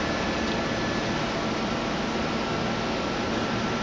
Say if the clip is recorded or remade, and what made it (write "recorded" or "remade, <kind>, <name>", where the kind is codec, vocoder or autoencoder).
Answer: recorded